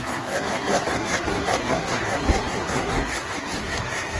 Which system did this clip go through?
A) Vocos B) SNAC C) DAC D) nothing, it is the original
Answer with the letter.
B